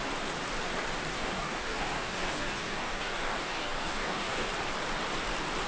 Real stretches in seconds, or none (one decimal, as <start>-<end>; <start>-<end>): 0.0-1.1; 4.5-5.7